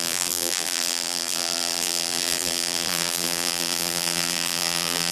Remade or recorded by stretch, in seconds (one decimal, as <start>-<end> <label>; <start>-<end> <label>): 0.0-5.1 remade